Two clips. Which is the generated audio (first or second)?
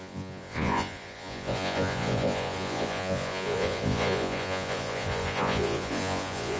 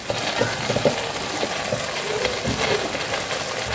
first